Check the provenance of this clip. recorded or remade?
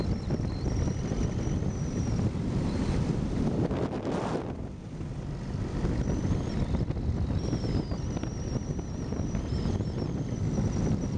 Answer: recorded